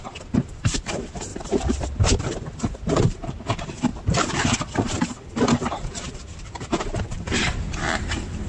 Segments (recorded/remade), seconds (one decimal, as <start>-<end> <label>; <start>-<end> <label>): 0.0-8.5 remade